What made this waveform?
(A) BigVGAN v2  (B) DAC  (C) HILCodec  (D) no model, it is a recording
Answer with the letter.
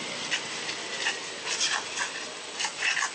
D